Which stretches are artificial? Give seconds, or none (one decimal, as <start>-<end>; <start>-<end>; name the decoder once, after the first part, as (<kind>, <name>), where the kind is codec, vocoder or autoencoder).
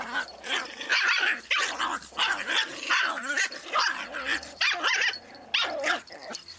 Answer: none